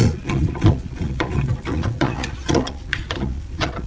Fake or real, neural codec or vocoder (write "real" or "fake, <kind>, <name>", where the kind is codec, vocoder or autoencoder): fake, vocoder, Vocos